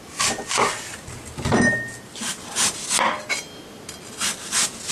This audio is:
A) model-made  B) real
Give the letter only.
B